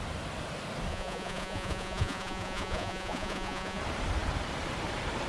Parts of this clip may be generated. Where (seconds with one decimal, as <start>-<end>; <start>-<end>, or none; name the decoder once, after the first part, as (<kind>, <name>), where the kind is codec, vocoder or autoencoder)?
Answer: 0.9-3.8 (vocoder, Vocos)